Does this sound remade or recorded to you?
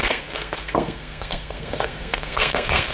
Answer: remade